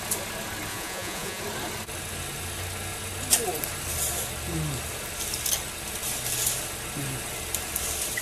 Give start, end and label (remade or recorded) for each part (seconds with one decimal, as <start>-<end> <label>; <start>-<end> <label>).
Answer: 0.0-0.7 recorded; 0.7-1.4 remade; 1.4-8.2 recorded